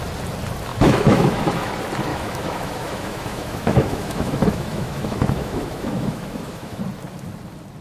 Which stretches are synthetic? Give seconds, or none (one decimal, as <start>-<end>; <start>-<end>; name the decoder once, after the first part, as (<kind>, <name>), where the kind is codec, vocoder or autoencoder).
0.7-1.7 (autoencoder, DAC-VAE); 2.1-6.8